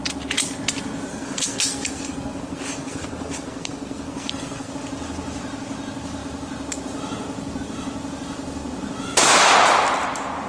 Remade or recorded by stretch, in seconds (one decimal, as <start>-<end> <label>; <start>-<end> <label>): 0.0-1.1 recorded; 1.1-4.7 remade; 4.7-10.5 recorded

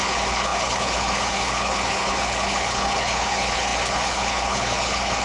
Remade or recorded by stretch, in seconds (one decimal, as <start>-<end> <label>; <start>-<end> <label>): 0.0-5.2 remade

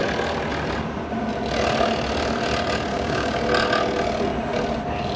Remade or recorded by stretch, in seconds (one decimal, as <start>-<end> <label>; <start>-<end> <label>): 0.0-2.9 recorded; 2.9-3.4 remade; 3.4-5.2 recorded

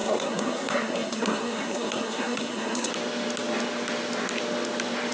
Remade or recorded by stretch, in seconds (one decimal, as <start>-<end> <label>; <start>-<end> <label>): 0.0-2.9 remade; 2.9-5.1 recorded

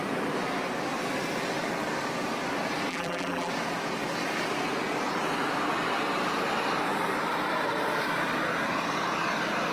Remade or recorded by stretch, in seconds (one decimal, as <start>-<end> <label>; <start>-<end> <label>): 0.0-2.9 recorded; 2.9-3.5 remade; 3.5-9.7 recorded

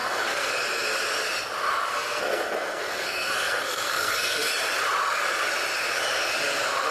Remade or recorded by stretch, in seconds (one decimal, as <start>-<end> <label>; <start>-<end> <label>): 0.0-0.5 remade; 0.5-1.9 recorded; 1.9-4.5 remade; 4.5-6.9 recorded

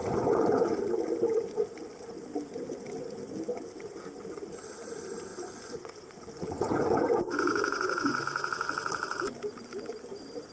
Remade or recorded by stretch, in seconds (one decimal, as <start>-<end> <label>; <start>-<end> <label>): 0.0-0.8 remade; 0.8-5.3 recorded; 5.3-8.2 remade; 8.2-10.5 recorded